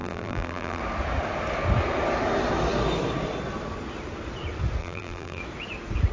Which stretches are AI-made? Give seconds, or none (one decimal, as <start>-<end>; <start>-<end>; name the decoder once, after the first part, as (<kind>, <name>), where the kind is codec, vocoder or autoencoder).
0.0-0.8 (vocoder, BigVGAN v2); 4.8-5.4